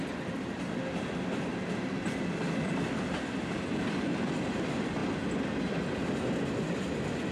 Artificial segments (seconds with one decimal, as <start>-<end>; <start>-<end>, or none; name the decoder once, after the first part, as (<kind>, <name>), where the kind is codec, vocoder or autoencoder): 1.5-2.2 (vocoder, BigVGAN v2)